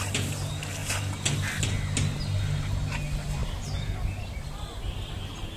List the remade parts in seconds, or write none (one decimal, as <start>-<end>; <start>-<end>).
none